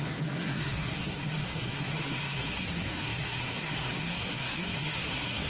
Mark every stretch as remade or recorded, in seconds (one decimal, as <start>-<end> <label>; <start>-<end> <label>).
0.0-5.5 remade